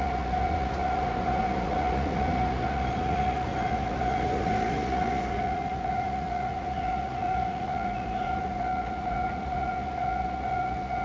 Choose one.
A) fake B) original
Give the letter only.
A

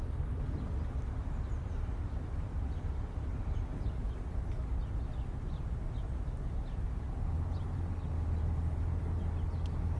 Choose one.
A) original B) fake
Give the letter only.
A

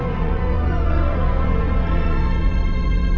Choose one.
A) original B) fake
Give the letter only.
B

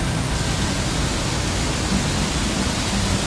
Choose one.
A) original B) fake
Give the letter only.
A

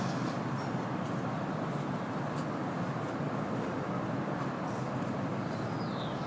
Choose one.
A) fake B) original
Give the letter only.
B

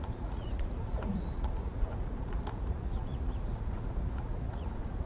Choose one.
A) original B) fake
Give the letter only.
B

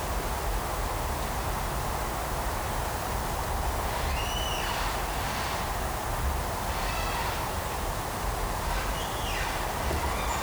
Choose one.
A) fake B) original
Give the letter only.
B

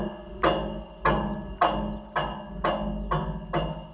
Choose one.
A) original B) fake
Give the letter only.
A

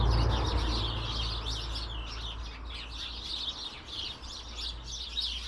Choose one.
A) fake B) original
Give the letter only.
B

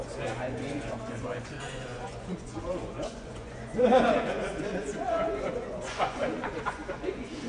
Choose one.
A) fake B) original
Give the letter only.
A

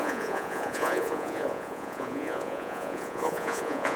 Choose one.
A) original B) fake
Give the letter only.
B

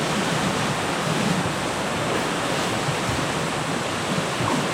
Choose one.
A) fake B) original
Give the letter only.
B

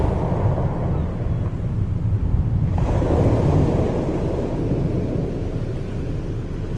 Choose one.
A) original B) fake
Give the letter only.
A